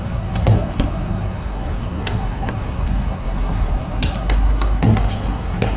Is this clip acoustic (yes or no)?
no